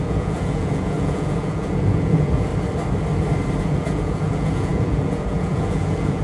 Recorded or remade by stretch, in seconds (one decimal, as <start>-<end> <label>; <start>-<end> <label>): 0.0-2.5 remade; 2.5-3.6 recorded; 3.6-6.2 remade